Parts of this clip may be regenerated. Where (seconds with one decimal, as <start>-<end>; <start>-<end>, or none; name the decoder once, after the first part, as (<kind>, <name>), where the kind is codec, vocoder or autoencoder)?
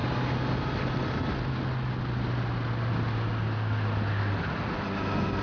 none